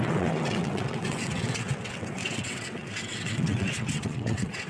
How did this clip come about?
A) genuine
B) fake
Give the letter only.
B